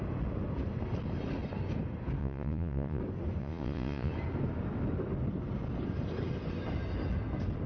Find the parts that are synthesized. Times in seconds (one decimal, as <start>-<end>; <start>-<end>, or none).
2.2-3.0; 3.4-4.1